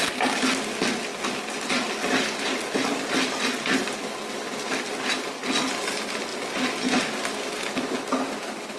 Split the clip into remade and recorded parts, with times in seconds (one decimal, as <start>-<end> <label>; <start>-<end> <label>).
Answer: 0.0-8.8 recorded